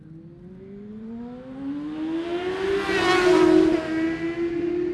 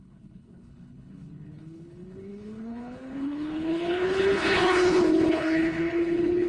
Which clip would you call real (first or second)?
first